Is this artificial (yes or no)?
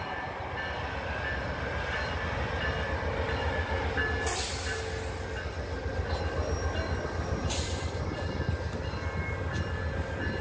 no